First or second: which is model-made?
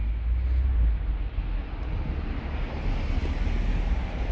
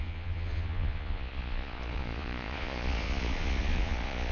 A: second